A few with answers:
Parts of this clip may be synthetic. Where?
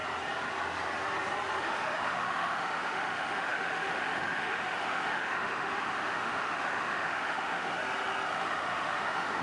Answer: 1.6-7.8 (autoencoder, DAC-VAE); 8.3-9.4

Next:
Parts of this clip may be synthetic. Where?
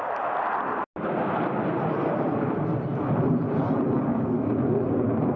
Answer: none